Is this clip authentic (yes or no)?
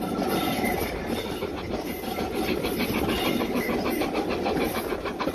yes